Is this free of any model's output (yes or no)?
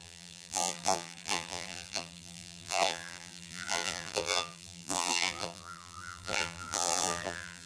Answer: no